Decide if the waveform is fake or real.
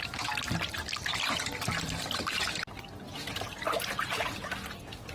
real